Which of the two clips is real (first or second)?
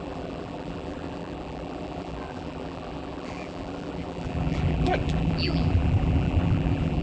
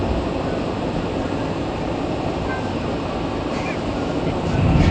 second